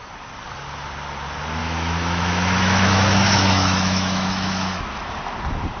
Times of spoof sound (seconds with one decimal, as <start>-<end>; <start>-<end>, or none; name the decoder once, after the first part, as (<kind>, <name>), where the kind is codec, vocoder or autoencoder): 1.6-4.8 (autoencoder, DAC-VAE)